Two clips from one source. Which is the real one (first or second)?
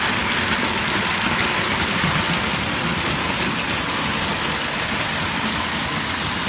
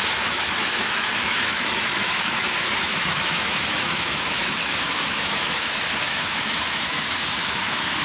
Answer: first